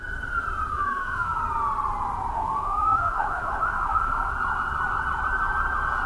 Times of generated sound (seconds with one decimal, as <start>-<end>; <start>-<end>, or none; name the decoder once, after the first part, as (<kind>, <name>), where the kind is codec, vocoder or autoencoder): 0.7-1.4 (autoencoder, DAC-VAE); 2.3-4.3